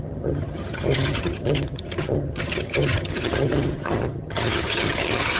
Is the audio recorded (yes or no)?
no